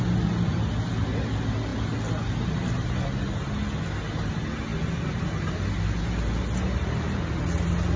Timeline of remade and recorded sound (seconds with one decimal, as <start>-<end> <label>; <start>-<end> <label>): 0.0-8.0 recorded